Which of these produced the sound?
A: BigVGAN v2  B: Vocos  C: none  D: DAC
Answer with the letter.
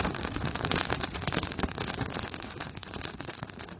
B